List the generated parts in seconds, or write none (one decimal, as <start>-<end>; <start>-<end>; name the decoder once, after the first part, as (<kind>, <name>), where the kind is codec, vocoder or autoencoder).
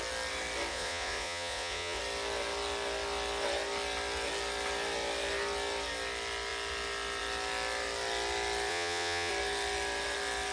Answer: 0.7-2.0 (vocoder, Vocos); 8.7-9.3